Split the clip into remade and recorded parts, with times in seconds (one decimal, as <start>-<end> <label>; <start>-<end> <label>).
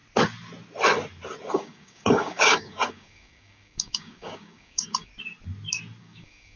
0.0-1.5 recorded; 1.5-5.1 remade; 5.1-6.0 recorded; 6.0-6.6 remade